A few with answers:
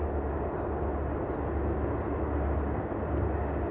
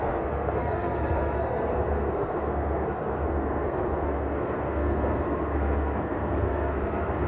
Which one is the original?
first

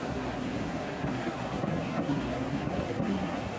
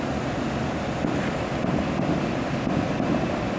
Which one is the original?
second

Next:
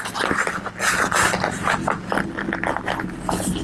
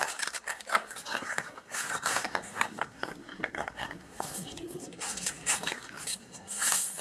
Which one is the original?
first